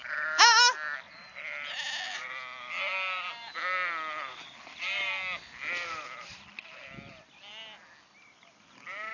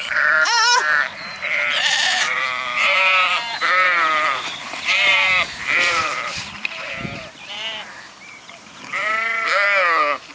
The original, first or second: first